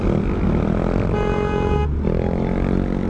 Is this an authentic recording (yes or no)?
yes